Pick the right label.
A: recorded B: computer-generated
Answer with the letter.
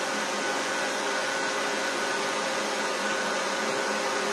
B